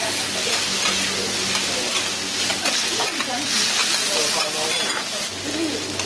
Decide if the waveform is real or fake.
real